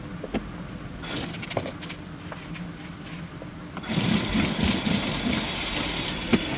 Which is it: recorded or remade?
recorded